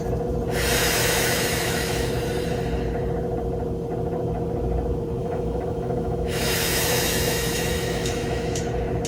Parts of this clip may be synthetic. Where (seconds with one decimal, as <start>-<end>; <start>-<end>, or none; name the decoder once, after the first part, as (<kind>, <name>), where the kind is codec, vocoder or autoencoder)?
0.8-2.1 (autoencoder, DAC-VAE); 5.2-8.6